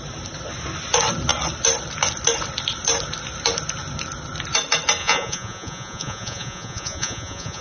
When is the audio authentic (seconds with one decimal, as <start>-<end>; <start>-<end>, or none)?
0.0-5.0